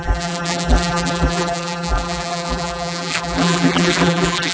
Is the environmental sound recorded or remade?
remade